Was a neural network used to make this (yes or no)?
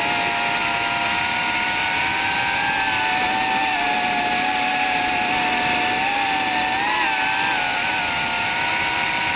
no